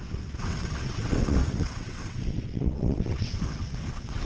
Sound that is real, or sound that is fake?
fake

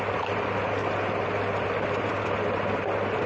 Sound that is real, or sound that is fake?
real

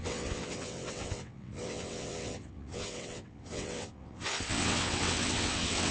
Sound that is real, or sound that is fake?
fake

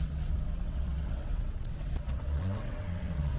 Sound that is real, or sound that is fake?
fake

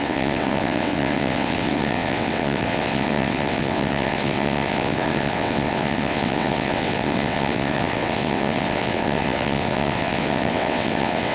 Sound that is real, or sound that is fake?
fake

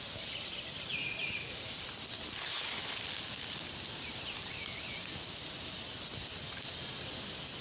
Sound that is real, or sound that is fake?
real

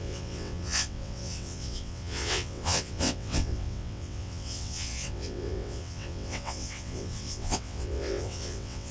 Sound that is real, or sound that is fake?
fake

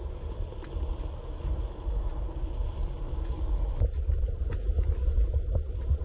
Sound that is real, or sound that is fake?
real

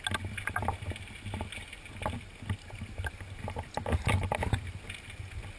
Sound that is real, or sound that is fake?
real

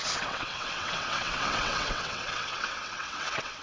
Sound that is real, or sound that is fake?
fake